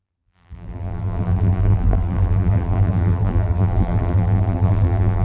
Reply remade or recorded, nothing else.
remade